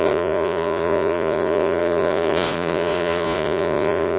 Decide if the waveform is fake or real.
fake